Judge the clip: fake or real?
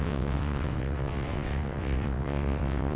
fake